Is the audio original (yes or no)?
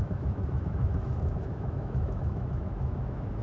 no